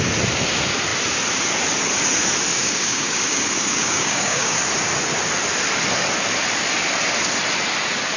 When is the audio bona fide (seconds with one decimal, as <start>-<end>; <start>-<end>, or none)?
0.0-2.5; 4.6-8.2